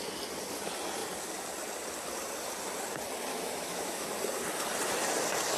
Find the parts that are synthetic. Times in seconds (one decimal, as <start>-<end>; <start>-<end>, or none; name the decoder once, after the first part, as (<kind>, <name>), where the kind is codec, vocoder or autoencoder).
3.3-4.1 (autoencoder, DAC-VAE)